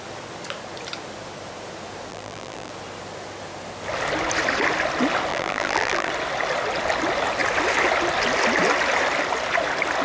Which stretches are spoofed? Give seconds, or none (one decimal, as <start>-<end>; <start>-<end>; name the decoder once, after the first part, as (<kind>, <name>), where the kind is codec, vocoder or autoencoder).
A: 2.1-2.7 (vocoder, BigVGAN v2); 5.3-6.1